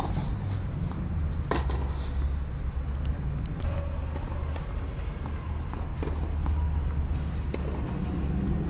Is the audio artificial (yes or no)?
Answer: no